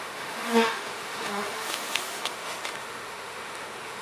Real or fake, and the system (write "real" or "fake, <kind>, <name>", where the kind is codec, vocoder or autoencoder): fake, autoencoder, DAC-VAE